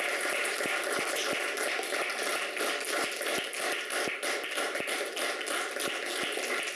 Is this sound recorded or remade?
recorded